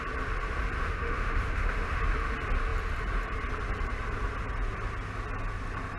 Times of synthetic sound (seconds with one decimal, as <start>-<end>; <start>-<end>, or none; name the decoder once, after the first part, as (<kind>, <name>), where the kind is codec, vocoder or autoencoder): 0.8-2.0 (autoencoder, DAC-VAE)